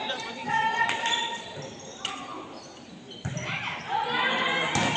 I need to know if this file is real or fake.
real